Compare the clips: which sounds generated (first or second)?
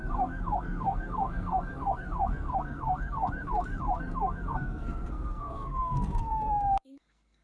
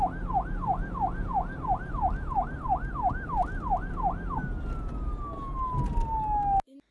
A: first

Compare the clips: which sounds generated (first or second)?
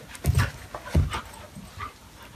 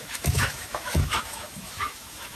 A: second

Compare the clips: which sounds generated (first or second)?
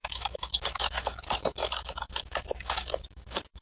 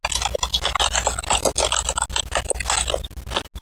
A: first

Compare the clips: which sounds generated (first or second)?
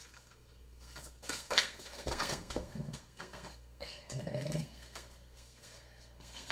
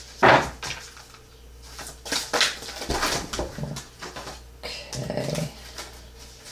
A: first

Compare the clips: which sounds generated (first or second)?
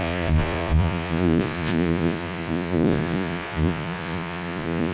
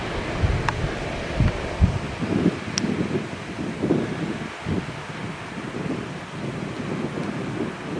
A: first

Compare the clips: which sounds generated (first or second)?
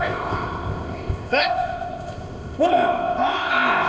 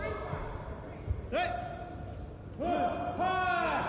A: first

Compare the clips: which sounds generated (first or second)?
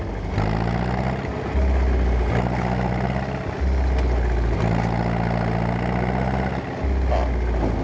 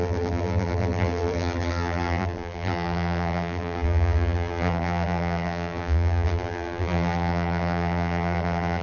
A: second